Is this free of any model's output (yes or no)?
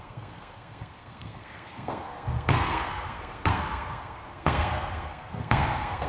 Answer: no